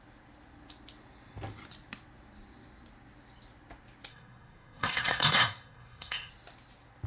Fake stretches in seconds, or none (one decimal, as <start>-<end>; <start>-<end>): 4.1-6.3